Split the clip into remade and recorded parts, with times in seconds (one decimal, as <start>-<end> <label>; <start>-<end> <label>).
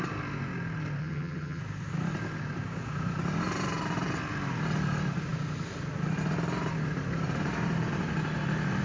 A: 0.0-1.0 recorded; 1.0-1.6 remade; 1.6-8.8 recorded